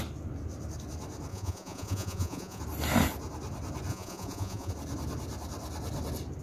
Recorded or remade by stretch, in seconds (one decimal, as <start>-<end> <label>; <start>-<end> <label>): 0.0-1.3 recorded; 1.3-2.6 remade; 2.6-3.9 recorded; 3.9-4.7 remade; 4.7-6.4 recorded